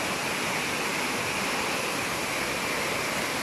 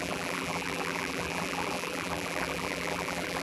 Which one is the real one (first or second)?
first